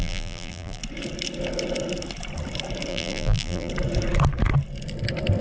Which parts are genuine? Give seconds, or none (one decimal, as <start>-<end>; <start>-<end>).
0.8-2.9; 3.7-5.4